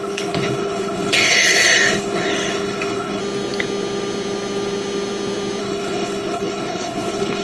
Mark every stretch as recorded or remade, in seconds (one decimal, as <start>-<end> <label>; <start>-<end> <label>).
0.0-3.2 remade; 3.2-5.6 recorded; 5.6-7.4 remade